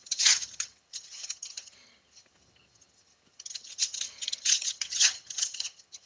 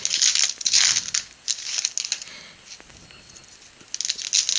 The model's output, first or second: first